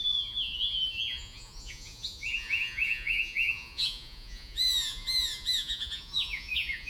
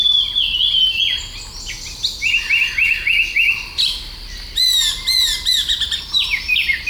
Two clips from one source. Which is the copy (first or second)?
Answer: first